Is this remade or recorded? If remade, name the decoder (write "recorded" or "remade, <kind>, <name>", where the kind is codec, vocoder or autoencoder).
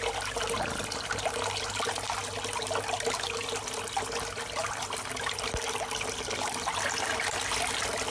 recorded